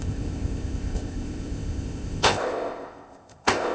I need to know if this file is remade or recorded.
remade